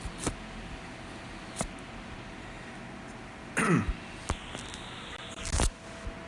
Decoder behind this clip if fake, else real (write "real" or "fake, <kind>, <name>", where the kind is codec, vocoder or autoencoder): real